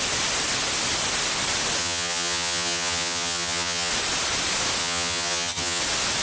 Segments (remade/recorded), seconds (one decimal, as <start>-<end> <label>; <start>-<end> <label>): 0.0-1.8 recorded; 1.8-3.9 remade; 3.9-4.8 recorded; 4.8-5.8 remade; 5.8-6.2 recorded